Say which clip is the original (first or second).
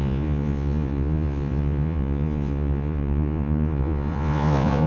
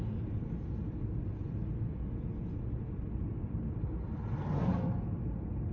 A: second